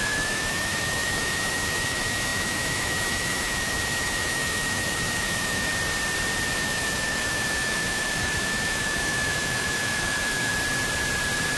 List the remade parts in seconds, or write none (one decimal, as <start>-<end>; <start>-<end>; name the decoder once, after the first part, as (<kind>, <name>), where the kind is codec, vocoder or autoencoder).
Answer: 0.0-5.7 (autoencoder, DAC-VAE); 6.5-10.5